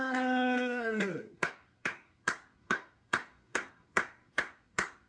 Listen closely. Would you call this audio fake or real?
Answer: fake